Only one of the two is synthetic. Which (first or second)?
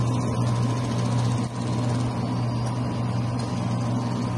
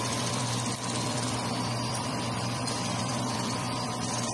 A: second